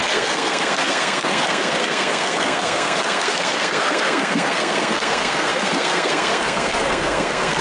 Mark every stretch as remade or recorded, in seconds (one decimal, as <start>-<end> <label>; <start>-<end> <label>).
0.0-7.6 remade